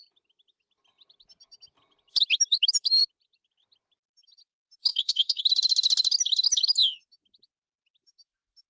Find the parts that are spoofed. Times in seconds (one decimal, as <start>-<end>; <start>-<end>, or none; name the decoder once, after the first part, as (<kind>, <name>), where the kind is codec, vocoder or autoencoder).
4.9-5.4 (codec, SNAC)